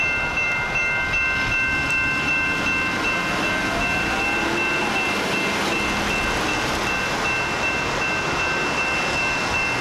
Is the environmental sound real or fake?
real